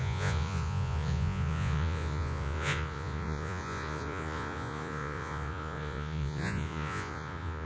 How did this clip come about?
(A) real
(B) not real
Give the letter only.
B